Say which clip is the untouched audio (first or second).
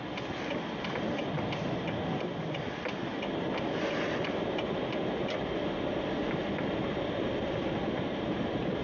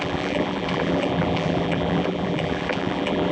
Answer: first